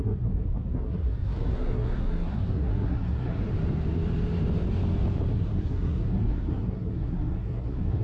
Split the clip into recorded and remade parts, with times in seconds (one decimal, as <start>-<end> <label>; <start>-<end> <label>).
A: 0.0-3.5 remade; 3.5-5.3 recorded; 5.3-8.0 remade